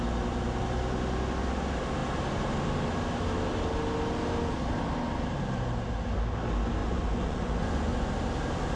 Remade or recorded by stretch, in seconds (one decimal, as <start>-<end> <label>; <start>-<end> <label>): 0.0-6.8 recorded; 6.8-8.1 remade; 8.1-8.8 recorded